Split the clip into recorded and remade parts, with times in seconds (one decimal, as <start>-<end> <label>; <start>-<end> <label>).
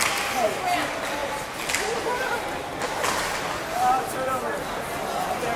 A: 0.0-1.2 recorded; 1.2-4.6 remade; 4.6-5.6 recorded